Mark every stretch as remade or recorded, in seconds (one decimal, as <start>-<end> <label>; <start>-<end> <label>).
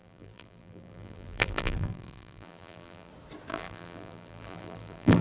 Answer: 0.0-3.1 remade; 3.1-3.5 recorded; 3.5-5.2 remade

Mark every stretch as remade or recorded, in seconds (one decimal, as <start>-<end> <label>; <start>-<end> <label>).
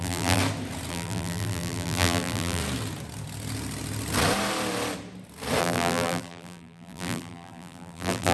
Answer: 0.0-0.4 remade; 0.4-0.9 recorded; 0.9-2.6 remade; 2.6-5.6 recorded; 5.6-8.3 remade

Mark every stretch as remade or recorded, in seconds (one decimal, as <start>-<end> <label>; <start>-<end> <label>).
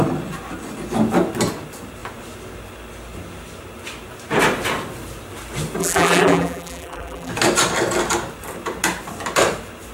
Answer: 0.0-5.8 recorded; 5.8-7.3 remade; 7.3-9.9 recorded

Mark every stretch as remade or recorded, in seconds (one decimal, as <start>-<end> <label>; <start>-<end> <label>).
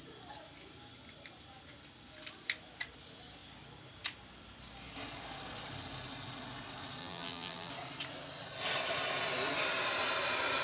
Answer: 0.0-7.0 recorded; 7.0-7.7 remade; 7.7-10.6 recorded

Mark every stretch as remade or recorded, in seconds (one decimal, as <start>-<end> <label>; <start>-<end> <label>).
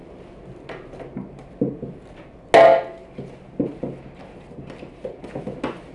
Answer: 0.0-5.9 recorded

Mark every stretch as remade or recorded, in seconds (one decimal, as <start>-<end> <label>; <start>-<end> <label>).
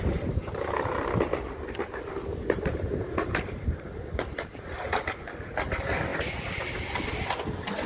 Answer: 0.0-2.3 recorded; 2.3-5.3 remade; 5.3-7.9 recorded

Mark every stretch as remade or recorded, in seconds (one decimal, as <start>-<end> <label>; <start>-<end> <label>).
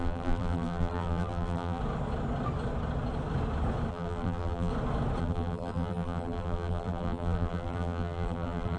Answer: 0.0-1.8 remade; 1.8-3.9 recorded; 3.9-4.7 remade; 4.7-5.2 recorded; 5.2-8.8 remade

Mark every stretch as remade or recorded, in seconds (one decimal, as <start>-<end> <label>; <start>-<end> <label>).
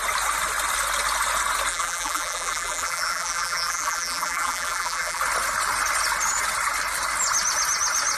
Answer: 0.0-1.7 recorded; 1.7-5.2 remade; 5.2-8.2 recorded